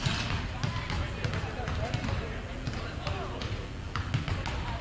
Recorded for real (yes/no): yes